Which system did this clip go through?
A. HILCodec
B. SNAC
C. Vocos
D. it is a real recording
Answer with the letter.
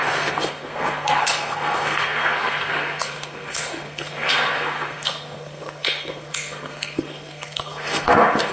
B